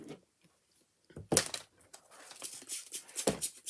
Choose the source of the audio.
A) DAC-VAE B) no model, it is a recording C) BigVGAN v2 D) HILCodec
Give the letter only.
B